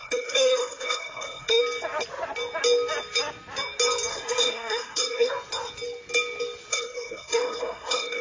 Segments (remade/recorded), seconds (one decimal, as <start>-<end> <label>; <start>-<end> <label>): 0.0-1.6 remade; 1.6-4.1 recorded; 4.1-5.3 remade; 5.3-6.7 recorded; 6.7-8.2 remade